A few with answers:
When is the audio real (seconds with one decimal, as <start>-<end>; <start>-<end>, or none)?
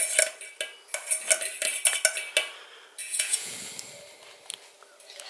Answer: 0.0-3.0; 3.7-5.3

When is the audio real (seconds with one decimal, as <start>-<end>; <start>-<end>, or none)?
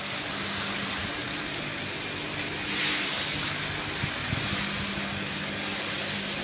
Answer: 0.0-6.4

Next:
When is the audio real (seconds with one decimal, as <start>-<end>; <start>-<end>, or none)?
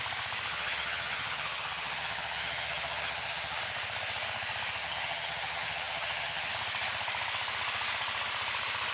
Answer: 0.0-0.5; 3.6-4.8; 6.5-8.9